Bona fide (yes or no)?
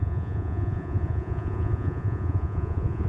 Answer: no